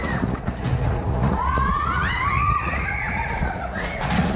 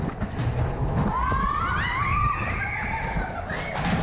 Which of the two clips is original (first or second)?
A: second